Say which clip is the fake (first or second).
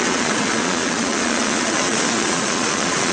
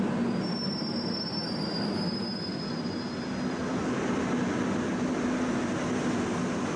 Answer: first